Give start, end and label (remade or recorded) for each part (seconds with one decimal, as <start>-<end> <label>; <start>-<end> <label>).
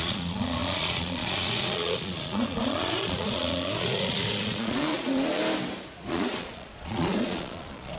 0.0-5.4 remade; 5.4-6.1 recorded; 6.1-8.0 remade